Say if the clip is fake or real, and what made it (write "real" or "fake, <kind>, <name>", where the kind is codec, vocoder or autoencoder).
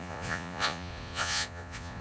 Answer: fake, vocoder, Vocos